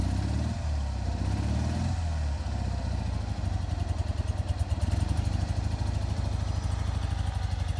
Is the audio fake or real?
real